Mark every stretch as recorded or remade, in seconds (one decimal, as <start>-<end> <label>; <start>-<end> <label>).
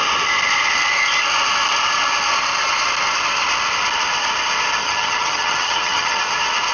0.0-4.8 recorded; 4.8-6.3 remade; 6.3-6.7 recorded